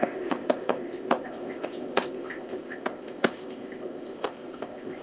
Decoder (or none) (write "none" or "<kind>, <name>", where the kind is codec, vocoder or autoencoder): codec, ZipCodec